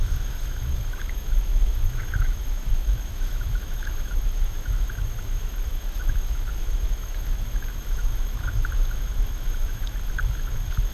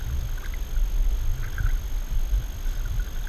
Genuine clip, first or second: second